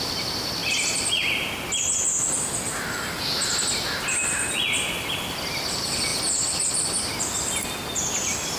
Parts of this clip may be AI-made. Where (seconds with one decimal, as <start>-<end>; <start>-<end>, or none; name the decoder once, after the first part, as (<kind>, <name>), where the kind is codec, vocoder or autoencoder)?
none